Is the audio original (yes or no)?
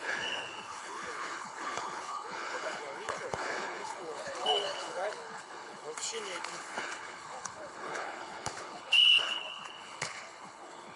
no